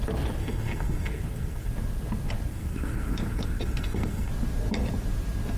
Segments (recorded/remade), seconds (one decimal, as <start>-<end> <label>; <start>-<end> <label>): 0.0-0.4 recorded; 0.4-1.7 remade; 1.7-2.5 recorded; 2.5-4.3 remade; 4.3-5.6 recorded